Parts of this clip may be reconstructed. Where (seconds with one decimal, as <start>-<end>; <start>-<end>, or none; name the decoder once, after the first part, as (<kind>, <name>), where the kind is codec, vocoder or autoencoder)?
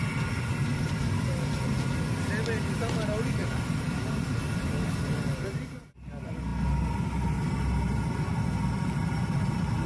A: none